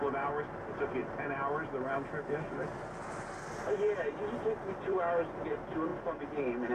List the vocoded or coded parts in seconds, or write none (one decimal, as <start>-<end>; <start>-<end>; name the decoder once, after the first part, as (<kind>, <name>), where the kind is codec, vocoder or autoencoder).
none